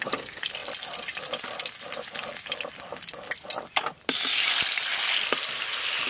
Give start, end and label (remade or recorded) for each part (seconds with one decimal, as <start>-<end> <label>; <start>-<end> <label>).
0.0-6.1 recorded

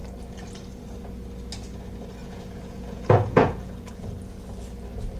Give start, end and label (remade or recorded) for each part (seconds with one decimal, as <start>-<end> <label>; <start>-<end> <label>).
0.0-2.2 recorded; 2.2-3.9 remade; 3.9-5.2 recorded

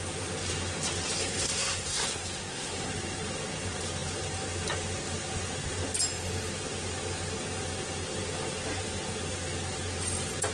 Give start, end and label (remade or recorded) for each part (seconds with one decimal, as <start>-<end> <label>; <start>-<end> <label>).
0.0-1.2 recorded; 1.2-2.9 remade; 2.9-10.5 recorded